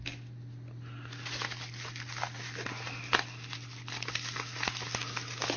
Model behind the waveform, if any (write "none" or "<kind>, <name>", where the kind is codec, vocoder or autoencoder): none